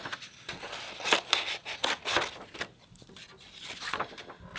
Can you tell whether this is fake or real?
real